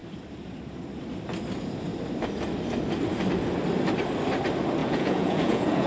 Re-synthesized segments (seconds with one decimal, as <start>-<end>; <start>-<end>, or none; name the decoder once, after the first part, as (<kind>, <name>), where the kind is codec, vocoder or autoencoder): 4.8-5.9 (vocoder, Vocos)

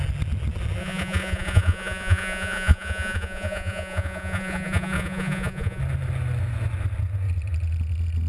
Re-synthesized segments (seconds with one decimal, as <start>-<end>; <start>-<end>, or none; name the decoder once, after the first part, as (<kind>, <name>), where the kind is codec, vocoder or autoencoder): 0.8-5.8 (vocoder, Vocos)

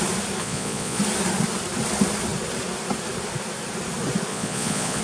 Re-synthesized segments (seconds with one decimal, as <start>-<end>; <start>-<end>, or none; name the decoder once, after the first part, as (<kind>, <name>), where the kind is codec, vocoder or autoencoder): 0.4-1.0 (vocoder, Vocos); 4.3-5.0

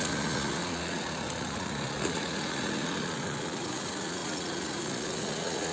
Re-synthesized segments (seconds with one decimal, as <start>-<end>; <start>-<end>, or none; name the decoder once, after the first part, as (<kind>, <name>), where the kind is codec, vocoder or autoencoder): 0.0-5.7 (vocoder, Vocos)

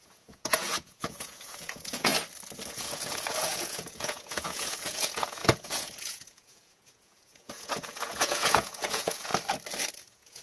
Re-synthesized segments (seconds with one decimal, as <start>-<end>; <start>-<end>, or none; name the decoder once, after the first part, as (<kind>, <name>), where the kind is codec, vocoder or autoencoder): 0.0-2.1 (vocoder, Vocos); 2.7-9.3; 9.9-10.4